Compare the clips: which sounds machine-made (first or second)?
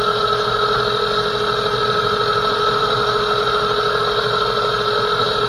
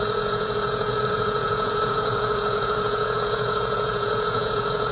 second